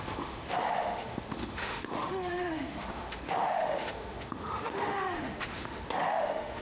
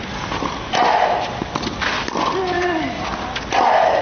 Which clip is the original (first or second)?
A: second